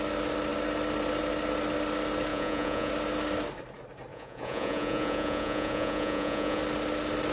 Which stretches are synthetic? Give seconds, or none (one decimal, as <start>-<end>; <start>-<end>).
2.3-2.9; 4.1-6.6